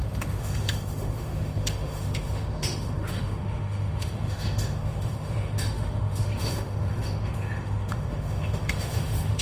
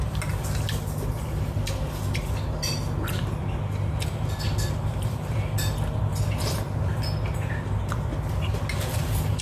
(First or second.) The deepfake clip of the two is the first